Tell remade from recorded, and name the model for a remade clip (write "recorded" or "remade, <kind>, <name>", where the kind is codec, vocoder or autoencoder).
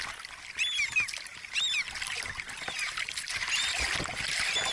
recorded